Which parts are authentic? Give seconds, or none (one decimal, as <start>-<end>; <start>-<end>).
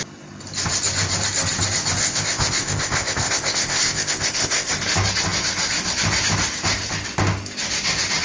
0.0-2.0; 4.7-8.2